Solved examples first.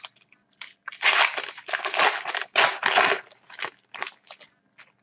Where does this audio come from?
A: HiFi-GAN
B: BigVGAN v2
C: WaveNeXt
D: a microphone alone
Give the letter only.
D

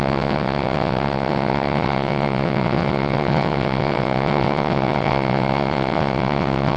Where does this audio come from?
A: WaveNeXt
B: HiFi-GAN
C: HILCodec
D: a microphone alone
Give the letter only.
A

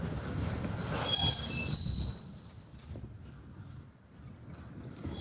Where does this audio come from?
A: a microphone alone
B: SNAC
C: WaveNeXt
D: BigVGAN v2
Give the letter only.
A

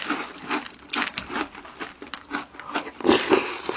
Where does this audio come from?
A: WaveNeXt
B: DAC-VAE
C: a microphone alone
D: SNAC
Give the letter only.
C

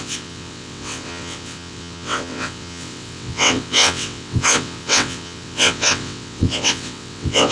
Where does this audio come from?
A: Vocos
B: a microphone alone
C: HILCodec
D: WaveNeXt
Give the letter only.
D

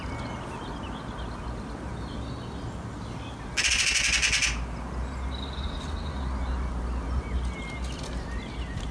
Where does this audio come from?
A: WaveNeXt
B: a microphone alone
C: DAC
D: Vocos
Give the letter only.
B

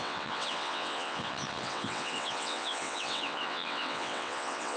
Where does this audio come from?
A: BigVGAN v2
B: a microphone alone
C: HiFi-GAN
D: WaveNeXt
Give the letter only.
D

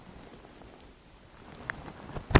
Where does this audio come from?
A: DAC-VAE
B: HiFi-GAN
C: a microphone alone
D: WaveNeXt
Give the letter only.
C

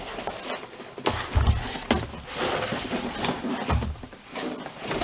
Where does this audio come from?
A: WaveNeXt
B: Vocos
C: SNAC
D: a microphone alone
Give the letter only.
D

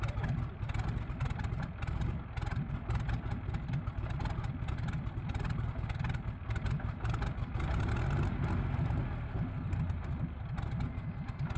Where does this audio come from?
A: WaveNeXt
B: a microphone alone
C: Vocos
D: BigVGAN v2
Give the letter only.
B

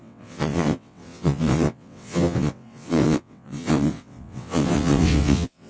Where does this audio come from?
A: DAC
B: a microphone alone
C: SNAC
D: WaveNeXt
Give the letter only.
D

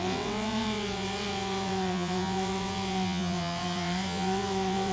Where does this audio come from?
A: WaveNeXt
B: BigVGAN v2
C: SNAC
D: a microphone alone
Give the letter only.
A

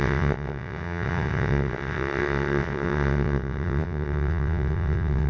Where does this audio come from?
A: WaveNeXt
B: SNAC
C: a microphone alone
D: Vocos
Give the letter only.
A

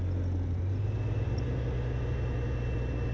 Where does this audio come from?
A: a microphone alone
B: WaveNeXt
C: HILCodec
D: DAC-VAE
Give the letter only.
A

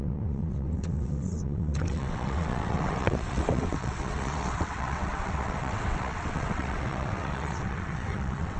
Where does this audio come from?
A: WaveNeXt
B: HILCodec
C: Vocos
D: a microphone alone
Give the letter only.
A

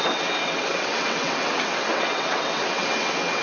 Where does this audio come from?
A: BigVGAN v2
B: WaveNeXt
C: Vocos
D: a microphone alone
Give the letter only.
B